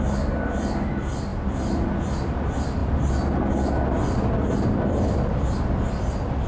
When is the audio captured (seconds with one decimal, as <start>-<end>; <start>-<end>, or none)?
0.0-6.5